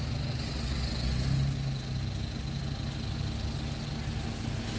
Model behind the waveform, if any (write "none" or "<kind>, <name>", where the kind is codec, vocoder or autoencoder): none